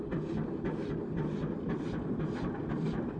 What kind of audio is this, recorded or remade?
recorded